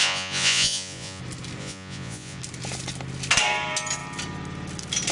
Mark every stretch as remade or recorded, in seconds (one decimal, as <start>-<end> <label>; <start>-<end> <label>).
0.0-1.2 remade; 1.2-1.6 recorded; 1.6-2.4 remade; 2.4-5.1 recorded